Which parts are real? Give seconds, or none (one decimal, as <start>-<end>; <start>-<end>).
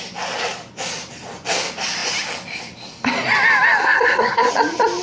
0.0-3.8; 4.5-5.0